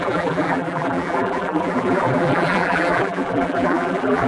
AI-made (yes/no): yes